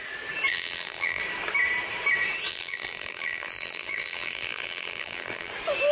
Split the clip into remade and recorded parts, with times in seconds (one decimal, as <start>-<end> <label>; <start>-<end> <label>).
0.0-0.5 recorded; 0.5-1.2 remade; 1.2-2.5 recorded; 2.5-5.5 remade; 5.5-5.9 recorded

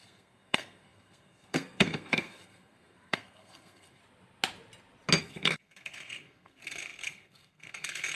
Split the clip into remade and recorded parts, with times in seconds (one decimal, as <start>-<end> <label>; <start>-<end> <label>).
0.0-4.0 remade; 4.0-5.2 recorded; 5.2-8.2 remade

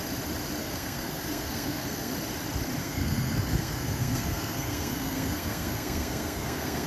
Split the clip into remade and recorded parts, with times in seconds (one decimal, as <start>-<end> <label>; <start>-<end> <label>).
0.0-0.6 recorded; 0.6-2.1 remade; 2.1-2.8 recorded; 2.8-6.9 remade